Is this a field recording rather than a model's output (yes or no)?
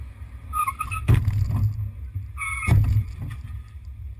yes